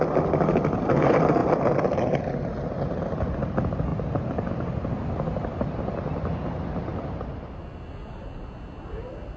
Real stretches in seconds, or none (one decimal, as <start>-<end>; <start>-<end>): 0.0-3.9; 4.5-9.4